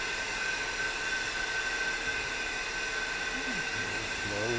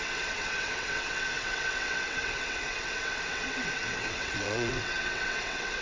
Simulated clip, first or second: second